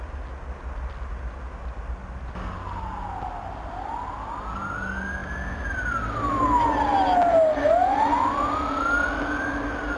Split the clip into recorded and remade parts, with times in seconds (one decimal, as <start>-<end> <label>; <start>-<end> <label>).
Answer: 0.0-10.0 recorded